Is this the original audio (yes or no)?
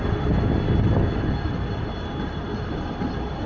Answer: no